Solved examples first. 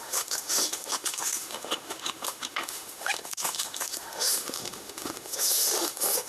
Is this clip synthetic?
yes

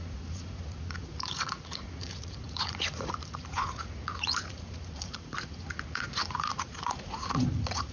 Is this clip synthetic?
yes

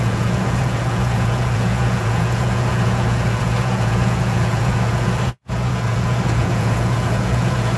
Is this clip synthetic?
yes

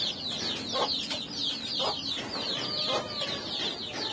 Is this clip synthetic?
no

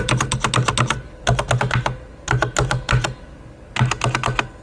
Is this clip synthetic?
no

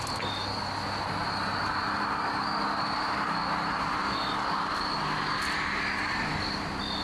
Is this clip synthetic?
no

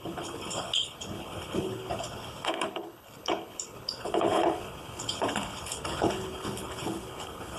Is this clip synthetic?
yes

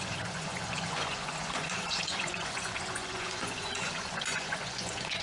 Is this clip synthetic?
yes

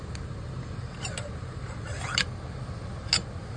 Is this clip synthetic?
no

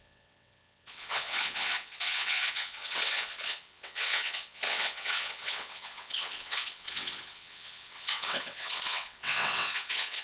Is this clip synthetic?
yes